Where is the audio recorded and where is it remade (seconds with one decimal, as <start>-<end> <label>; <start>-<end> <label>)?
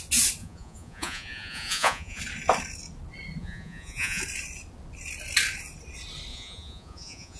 0.0-0.4 recorded; 0.4-2.2 remade; 2.2-3.4 recorded; 3.4-4.2 remade; 4.2-6.3 recorded; 6.3-7.4 remade